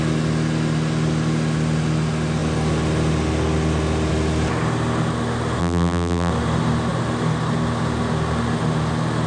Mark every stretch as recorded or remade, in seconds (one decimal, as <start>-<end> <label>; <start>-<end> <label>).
0.0-5.6 recorded; 5.6-6.3 remade; 6.3-9.3 recorded